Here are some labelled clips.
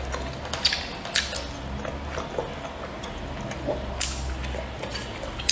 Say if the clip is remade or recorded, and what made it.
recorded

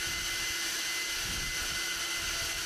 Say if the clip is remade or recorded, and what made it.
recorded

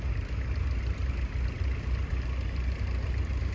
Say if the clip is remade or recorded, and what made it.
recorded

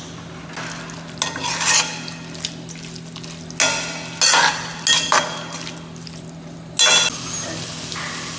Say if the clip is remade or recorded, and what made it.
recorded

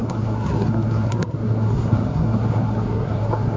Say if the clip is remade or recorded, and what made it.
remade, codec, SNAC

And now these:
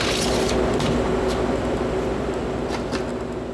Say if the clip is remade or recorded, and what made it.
recorded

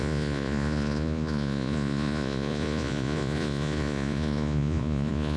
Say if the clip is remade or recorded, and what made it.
remade, vocoder, Vocos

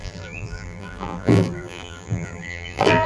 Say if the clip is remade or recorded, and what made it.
remade, vocoder, BigVGAN v2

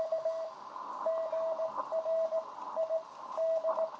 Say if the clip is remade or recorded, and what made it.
recorded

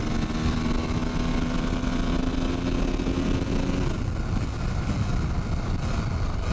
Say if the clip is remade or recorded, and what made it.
recorded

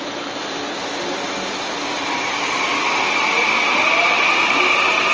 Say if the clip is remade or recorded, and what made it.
recorded